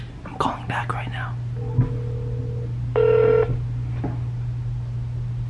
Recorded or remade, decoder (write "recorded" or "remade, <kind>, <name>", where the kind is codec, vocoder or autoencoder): recorded